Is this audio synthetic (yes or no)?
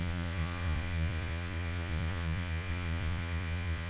yes